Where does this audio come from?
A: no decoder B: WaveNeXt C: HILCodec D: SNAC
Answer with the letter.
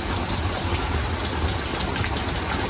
A